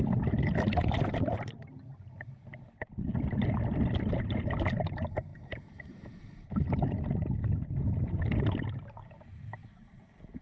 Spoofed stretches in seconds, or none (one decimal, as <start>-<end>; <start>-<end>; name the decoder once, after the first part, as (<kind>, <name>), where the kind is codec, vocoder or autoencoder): 2.8-4.4 (vocoder, BigVGAN v2); 5.3-5.9